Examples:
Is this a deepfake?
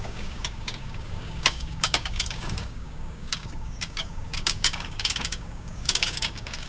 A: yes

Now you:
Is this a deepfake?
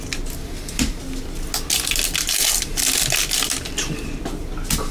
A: no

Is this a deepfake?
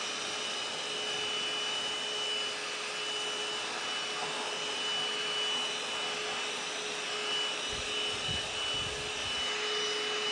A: no